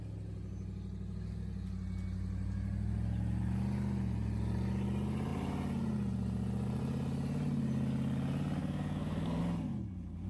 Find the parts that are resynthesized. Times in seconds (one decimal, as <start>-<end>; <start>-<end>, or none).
8.6-9.4